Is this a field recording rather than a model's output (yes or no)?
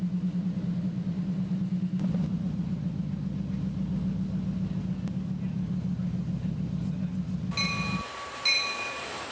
yes